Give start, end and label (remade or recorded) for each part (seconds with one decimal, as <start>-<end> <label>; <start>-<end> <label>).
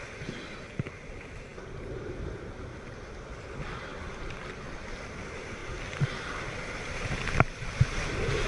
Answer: 0.0-8.5 recorded